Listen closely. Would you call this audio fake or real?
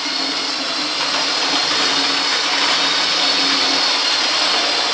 real